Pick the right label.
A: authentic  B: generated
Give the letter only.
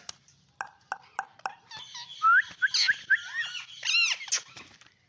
A